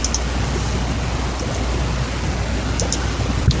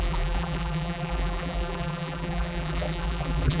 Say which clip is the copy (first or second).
second